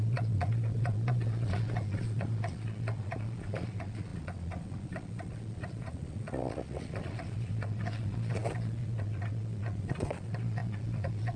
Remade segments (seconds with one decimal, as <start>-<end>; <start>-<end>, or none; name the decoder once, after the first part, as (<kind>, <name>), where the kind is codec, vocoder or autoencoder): 0.0-11.4 (vocoder, Vocos)